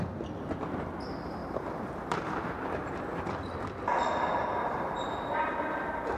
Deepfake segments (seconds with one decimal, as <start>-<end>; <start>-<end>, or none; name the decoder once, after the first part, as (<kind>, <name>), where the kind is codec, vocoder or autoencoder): 1.4-3.0 (vocoder, BigVGAN v2); 4.3-5.5